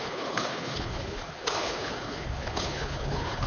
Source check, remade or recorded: remade